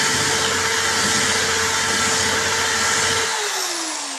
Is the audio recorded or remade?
recorded